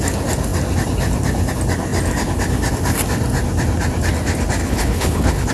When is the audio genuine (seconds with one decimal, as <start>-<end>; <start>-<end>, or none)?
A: 0.0-4.6